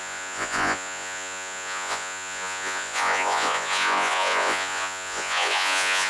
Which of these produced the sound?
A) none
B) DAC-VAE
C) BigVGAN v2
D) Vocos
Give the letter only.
D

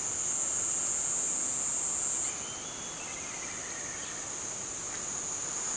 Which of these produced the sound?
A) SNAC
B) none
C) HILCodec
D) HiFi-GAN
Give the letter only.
B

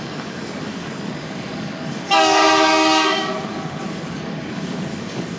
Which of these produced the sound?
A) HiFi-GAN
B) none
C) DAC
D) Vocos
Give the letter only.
C